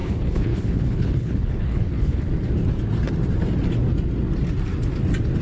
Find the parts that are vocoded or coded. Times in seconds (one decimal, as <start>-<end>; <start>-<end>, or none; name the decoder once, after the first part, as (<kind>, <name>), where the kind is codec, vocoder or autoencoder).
0.0-2.3 (codec, HILCodec)